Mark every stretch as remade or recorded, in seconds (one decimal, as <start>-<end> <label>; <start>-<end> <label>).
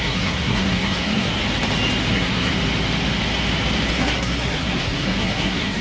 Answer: 0.0-1.4 remade; 1.4-2.1 recorded; 2.1-2.5 remade; 2.5-3.9 recorded; 3.9-5.8 remade